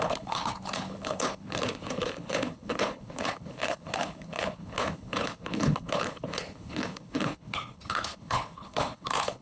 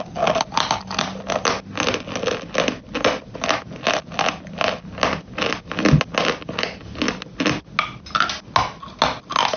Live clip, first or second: second